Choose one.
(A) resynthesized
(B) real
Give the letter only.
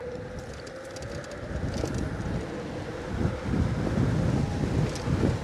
B